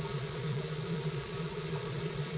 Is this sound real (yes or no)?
no